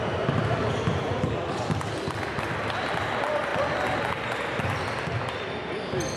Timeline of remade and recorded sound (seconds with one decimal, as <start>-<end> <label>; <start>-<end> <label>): 0.0-6.2 recorded